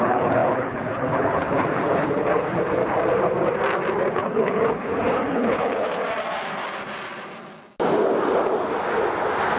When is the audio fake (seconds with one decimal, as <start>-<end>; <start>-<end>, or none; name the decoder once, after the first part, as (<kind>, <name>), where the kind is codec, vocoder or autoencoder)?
0.0-2.8 (codec, HILCodec); 4.1-6.0